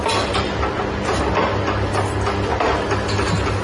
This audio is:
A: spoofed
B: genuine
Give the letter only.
B